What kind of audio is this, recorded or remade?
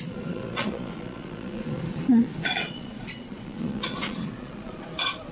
remade